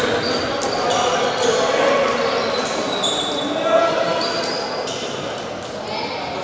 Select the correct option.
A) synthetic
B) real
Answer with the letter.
B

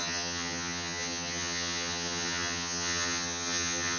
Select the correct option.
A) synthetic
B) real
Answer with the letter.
A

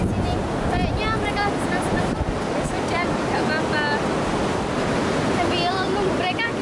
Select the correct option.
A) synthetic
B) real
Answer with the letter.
B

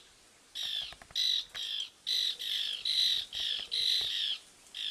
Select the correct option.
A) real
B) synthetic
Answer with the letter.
A